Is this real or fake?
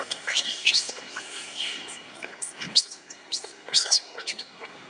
fake